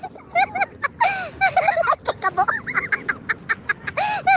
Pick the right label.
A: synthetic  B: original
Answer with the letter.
B